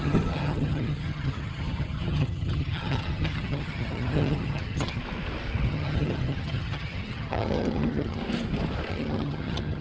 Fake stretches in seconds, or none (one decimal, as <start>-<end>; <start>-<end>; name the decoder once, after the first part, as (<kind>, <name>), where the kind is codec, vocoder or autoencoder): 0.0-5.0 (vocoder, HiFi-GAN); 5.7-8.2; 8.9-9.8